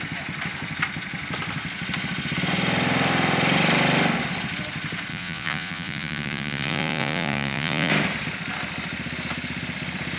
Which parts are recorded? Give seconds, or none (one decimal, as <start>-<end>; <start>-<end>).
0.0-5.1; 7.9-10.2